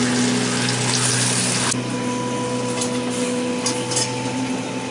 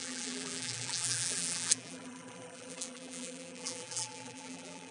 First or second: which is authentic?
first